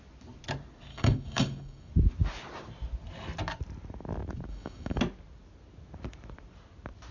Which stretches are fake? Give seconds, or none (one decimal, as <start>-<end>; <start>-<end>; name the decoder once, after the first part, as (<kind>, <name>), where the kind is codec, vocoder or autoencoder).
0.9-1.9 (codec, DAC); 4.5-5.0